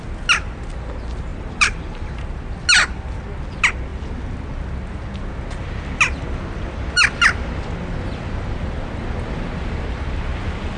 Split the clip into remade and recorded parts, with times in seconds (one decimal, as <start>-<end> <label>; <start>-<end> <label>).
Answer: 0.0-1.3 recorded; 1.3-2.2 remade; 2.2-10.8 recorded